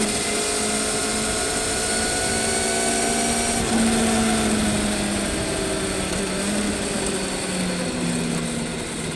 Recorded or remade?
recorded